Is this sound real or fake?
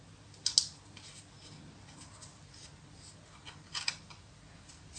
real